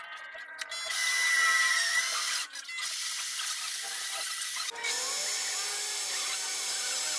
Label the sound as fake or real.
real